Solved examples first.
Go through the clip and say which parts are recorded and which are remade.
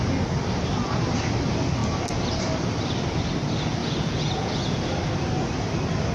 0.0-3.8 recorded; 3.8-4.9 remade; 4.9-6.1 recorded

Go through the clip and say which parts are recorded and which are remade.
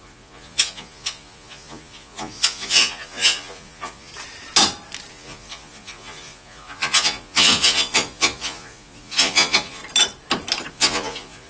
0.0-4.1 remade; 4.1-5.1 recorded; 5.1-9.8 remade; 9.8-10.7 recorded; 10.7-11.5 remade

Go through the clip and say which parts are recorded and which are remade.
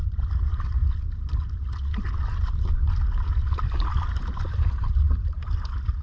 0.0-6.0 recorded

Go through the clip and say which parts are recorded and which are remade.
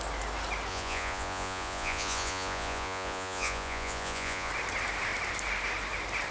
0.0-0.7 recorded; 0.7-4.5 remade; 4.5-6.3 recorded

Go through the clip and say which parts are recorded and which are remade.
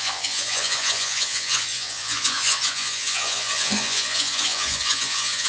0.0-5.5 remade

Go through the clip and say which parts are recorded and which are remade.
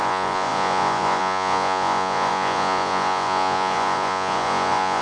0.0-5.0 remade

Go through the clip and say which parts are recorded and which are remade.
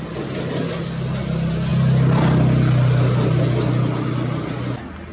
0.0-5.1 recorded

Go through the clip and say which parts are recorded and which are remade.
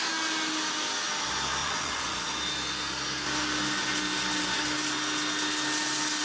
0.0-1.6 recorded; 1.6-2.3 remade; 2.3-6.2 recorded